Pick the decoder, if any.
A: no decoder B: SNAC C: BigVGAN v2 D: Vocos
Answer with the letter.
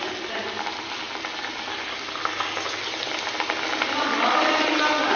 A